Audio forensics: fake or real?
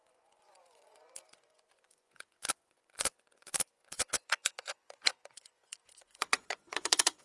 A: fake